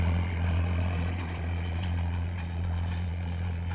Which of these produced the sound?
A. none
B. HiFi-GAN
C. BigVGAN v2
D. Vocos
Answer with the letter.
D